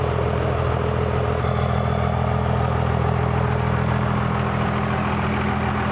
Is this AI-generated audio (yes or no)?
no